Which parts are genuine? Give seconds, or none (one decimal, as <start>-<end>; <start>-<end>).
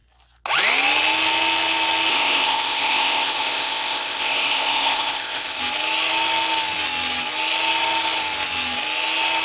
0.0-2.1; 5.6-9.4